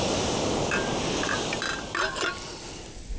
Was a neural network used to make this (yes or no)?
no